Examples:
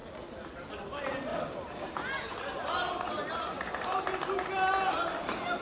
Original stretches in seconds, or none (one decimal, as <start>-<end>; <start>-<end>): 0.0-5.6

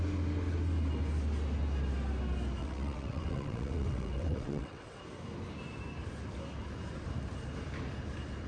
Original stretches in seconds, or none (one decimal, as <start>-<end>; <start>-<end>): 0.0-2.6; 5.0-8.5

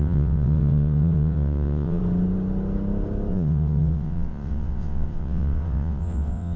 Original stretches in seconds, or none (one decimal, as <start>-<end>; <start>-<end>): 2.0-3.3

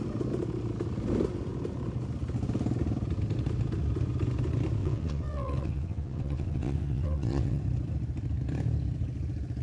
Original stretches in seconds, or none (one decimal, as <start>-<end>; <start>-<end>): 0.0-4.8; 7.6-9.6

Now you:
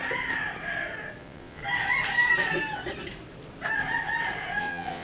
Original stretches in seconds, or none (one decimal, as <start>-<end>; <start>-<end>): 0.0-1.2; 1.6-4.6